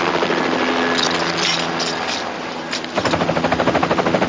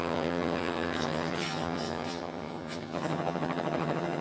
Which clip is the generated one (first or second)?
second